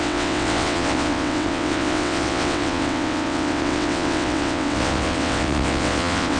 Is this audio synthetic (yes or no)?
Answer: yes